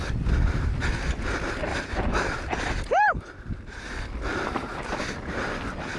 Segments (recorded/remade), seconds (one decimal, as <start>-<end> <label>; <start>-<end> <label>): 0.0-1.7 recorded; 1.7-5.0 remade; 5.0-6.0 recorded